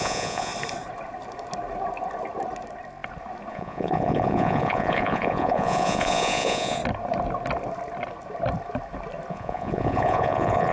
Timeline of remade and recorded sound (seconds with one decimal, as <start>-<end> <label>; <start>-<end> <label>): 0.0-0.5 remade; 0.5-3.5 recorded; 3.5-6.8 remade; 6.8-9.3 recorded; 9.3-10.7 remade